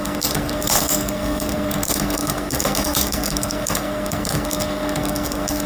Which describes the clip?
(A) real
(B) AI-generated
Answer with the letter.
B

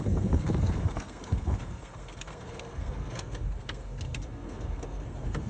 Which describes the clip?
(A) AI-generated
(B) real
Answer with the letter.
A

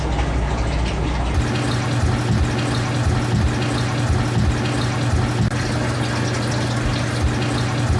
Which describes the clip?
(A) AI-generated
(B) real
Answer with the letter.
B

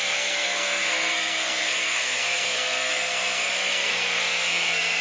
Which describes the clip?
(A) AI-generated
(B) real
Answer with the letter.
A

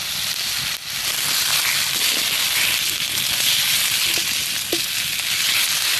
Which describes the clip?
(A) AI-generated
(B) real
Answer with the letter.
B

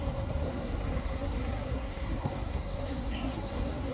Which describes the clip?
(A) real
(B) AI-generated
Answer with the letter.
B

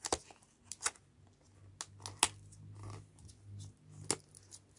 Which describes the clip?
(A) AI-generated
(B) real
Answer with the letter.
B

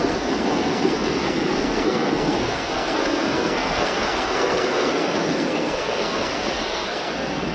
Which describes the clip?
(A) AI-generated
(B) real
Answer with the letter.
A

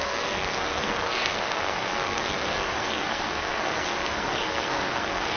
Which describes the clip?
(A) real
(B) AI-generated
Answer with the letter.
B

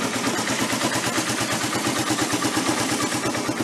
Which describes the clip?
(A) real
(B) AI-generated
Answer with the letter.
A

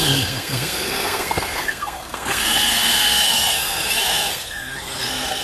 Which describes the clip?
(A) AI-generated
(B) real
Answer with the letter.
A